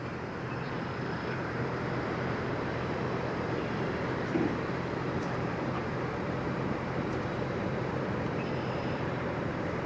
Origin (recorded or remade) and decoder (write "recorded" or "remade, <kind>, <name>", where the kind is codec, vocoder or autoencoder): remade, vocoder, BigVGAN v2